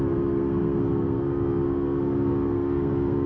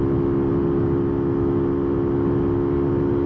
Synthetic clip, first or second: first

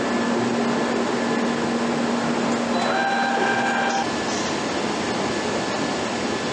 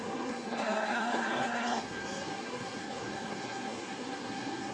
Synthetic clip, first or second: second